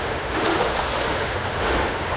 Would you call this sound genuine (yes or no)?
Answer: no